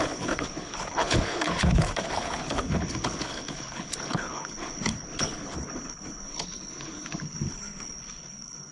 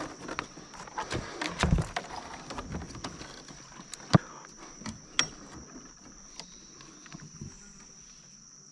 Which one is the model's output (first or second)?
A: first